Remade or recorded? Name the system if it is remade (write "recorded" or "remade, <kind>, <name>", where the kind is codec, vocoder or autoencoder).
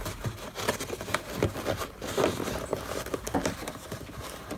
remade, vocoder, BigVGAN v2